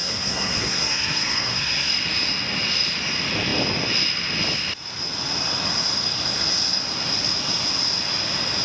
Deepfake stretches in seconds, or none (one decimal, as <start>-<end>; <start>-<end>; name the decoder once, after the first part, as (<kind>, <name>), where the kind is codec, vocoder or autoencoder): 0.0-1.9 (codec, SNAC)